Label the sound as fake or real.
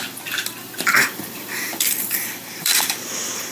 fake